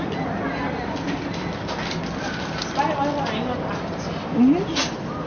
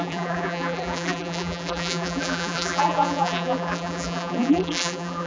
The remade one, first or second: second